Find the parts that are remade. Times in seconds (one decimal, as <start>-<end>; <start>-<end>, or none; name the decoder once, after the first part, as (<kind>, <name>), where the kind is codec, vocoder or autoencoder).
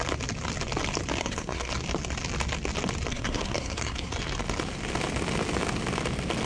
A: 1.2-1.7 (codec, SNAC); 3.1-4.1